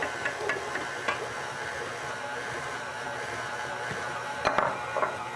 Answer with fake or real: real